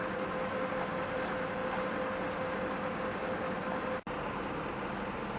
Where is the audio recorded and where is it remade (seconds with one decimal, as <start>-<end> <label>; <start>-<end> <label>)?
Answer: 0.0-5.4 recorded